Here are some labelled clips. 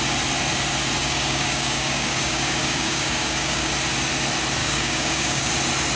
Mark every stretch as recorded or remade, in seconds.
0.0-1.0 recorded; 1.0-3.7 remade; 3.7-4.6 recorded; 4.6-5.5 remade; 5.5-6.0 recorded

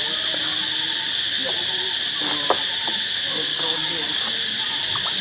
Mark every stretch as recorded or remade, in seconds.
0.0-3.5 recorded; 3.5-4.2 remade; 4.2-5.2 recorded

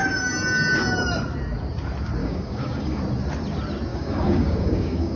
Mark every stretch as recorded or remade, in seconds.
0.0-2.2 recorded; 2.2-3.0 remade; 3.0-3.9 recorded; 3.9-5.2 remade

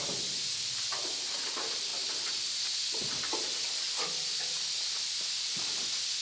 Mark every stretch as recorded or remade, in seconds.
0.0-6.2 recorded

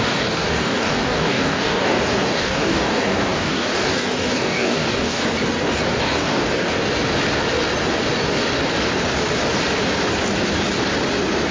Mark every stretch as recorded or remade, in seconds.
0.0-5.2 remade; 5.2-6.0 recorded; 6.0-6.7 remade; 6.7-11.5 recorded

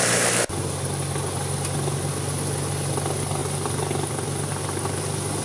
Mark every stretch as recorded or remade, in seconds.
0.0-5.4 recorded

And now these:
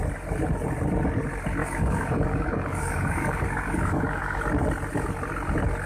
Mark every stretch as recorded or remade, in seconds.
0.0-1.6 recorded; 1.6-4.4 remade; 4.4-5.9 recorded